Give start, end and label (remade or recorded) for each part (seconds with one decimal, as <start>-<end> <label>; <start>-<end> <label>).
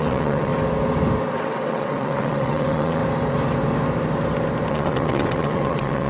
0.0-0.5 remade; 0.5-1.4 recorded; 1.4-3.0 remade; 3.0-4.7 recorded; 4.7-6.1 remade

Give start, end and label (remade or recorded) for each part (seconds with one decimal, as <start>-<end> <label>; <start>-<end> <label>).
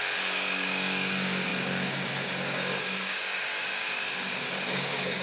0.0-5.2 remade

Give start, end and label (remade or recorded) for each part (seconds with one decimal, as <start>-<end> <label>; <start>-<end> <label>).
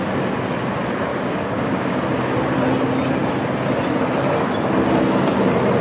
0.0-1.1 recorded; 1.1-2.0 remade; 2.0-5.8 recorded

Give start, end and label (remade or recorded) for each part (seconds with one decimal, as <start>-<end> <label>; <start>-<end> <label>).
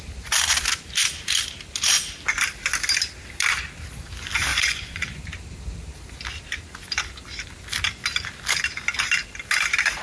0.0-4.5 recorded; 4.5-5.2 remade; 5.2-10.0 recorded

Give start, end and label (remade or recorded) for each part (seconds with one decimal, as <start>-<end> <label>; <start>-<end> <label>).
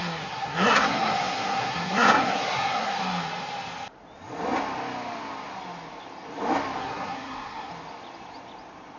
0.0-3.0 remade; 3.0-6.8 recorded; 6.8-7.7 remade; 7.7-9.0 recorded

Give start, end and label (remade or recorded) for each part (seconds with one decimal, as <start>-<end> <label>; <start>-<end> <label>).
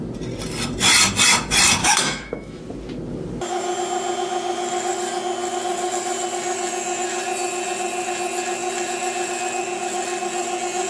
0.0-1.8 recorded; 1.8-2.6 remade; 2.6-10.9 recorded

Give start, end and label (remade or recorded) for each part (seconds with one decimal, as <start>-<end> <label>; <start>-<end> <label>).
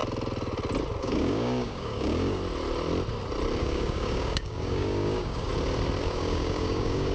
0.0-1.0 recorded; 1.0-2.4 remade; 2.4-3.6 recorded; 3.6-5.5 remade; 5.5-6.0 recorded; 6.0-7.1 remade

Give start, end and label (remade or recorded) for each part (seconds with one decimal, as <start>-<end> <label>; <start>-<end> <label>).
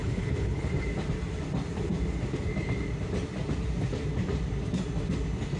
0.0-0.7 remade; 0.7-5.6 recorded